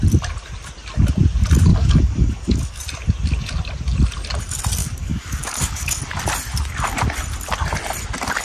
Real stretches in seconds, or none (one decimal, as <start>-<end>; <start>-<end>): 0.0-1.7; 2.8-4.8; 6.0-8.4